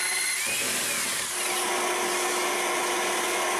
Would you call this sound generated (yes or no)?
no